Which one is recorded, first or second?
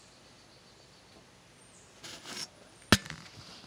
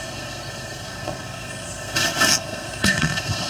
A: first